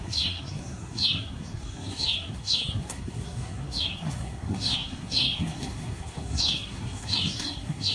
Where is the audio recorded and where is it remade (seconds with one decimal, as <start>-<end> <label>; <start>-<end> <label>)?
0.0-7.9 remade